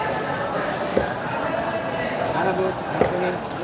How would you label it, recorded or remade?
recorded